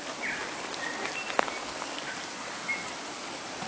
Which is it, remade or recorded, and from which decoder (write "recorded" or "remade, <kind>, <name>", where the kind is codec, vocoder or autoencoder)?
recorded